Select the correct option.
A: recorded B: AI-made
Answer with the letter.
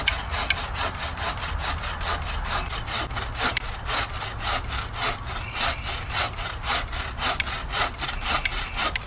A